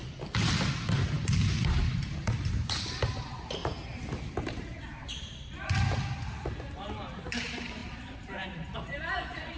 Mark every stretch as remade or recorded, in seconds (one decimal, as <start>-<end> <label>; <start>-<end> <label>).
0.0-0.9 recorded; 0.9-3.6 remade; 3.6-4.3 recorded; 4.3-9.6 remade